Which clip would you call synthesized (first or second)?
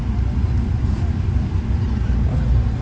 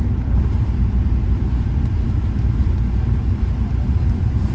second